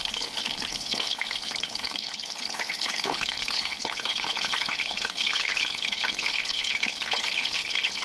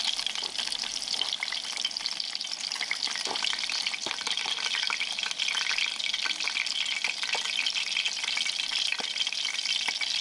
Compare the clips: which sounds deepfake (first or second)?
first